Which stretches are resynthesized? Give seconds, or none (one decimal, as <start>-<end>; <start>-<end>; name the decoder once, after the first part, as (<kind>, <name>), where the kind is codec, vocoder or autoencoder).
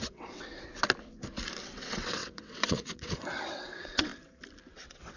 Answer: 0.0-0.5 (vocoder, WaveNeXt); 1.6-4.1; 4.7-5.2